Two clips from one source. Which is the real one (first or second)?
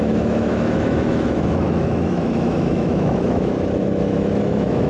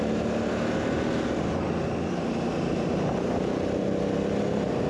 second